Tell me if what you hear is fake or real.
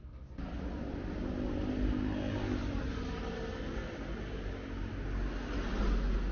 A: real